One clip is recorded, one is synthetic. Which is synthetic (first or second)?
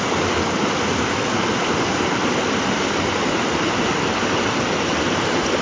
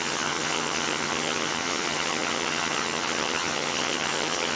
second